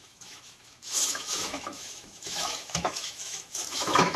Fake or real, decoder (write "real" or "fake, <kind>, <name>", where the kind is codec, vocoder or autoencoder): fake, autoencoder, DAC-VAE